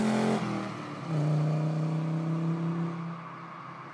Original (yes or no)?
yes